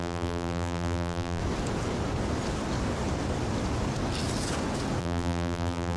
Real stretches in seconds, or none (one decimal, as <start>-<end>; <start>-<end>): 1.4-5.0